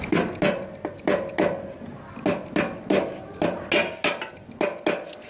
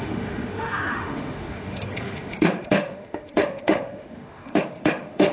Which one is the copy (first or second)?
second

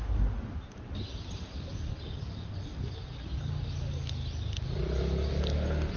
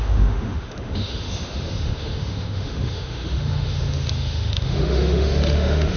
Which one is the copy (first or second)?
second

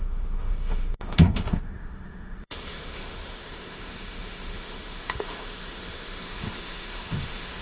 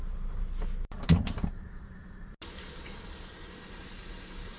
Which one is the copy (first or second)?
first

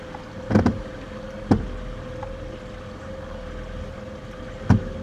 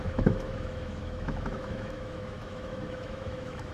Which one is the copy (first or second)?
second